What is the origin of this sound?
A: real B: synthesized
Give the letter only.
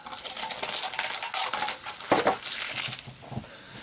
A